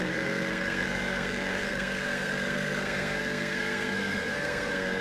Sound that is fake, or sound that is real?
fake